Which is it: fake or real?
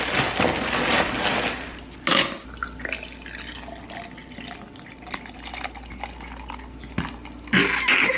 real